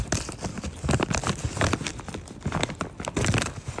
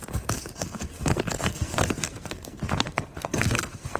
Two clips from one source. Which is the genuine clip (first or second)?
first